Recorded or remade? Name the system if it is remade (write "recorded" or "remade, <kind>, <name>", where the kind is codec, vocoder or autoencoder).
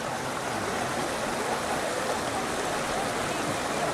recorded